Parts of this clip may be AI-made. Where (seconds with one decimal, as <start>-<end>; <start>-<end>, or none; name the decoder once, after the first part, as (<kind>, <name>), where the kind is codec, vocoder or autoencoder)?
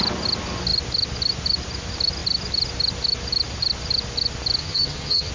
4.6-5.3 (vocoder, HiFi-GAN)